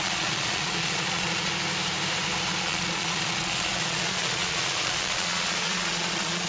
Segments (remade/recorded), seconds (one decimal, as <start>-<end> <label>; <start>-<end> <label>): 0.0-1.5 remade; 1.5-2.6 recorded; 2.6-6.5 remade